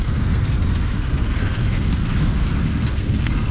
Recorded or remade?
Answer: remade